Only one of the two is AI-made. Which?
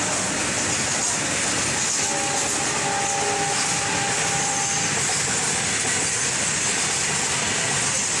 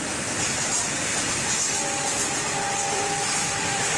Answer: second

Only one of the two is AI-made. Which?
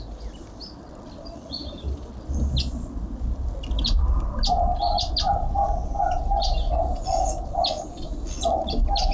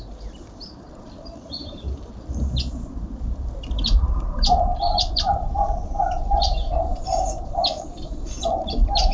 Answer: second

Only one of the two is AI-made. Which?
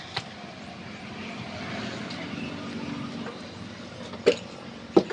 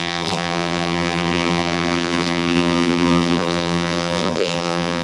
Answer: second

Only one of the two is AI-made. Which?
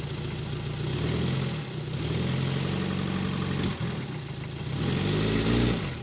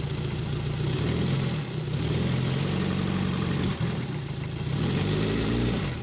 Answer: second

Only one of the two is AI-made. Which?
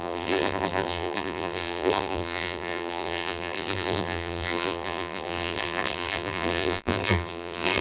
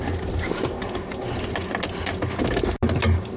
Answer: first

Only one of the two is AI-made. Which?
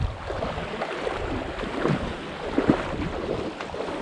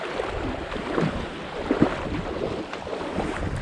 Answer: second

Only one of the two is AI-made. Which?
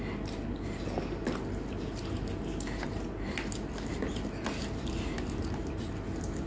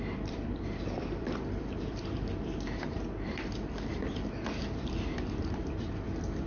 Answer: second